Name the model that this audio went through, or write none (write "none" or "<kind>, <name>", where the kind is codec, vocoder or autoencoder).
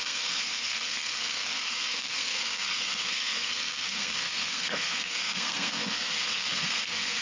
codec, SNAC